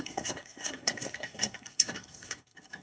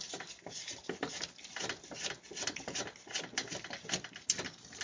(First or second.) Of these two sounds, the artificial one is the first